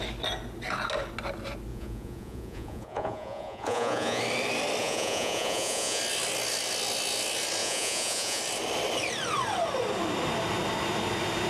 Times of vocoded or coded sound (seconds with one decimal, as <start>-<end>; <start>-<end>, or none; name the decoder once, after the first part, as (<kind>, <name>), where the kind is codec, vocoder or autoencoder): 1.7-4.2 (vocoder, Vocos); 4.8-6.0; 7.6-8.4